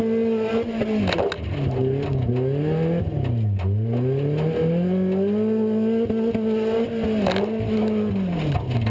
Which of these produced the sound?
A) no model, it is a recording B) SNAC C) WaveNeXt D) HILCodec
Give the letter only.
A